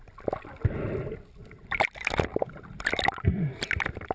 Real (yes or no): yes